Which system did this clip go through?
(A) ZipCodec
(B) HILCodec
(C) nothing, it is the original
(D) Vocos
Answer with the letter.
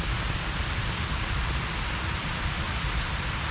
C